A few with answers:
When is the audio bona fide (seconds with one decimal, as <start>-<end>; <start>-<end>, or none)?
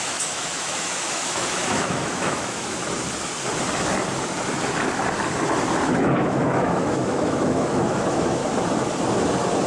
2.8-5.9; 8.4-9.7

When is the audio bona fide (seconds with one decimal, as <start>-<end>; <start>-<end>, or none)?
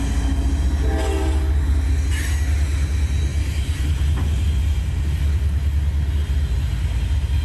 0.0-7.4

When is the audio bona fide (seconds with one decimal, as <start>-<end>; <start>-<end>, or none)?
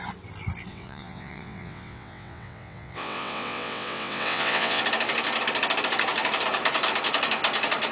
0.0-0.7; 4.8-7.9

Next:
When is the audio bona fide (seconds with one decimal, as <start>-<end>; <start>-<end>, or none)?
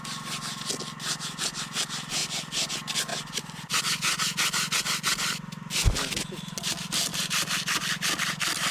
0.0-7.1; 7.8-8.7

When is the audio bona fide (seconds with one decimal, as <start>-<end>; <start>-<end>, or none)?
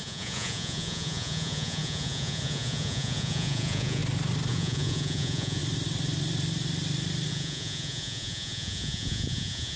4.0-4.5; 5.6-7.3